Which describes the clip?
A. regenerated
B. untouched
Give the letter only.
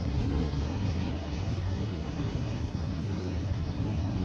A